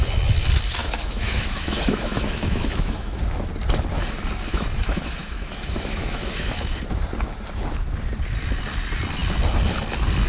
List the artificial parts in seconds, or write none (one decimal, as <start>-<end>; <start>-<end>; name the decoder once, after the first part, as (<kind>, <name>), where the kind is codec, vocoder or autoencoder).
0.8-3.2 (autoencoder, DAC-VAE); 4.5-6.8